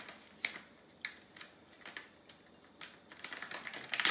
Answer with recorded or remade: recorded